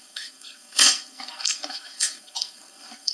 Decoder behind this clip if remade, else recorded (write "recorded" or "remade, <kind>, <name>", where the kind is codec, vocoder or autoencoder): remade, codec, SNAC